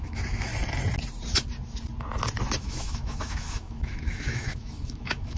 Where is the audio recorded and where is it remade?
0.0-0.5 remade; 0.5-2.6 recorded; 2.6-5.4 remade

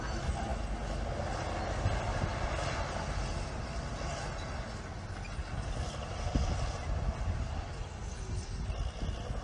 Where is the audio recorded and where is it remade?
0.0-9.4 recorded

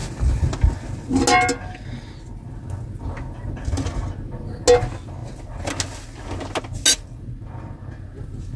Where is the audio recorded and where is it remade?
0.0-8.6 recorded

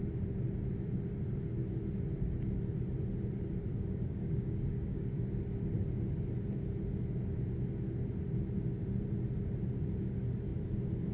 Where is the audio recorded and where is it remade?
0.0-3.7 recorded; 3.7-5.2 remade; 5.2-11.1 recorded